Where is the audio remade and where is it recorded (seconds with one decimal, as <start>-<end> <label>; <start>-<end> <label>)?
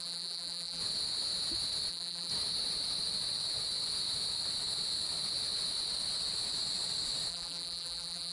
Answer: 0.0-0.8 remade; 0.8-1.9 recorded; 1.9-2.3 remade; 2.3-7.3 recorded; 7.3-8.3 remade